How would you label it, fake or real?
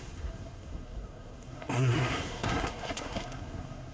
fake